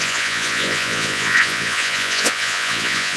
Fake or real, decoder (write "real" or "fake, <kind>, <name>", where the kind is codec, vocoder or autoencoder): fake, vocoder, Vocos